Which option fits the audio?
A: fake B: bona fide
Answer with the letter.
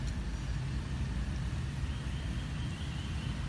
B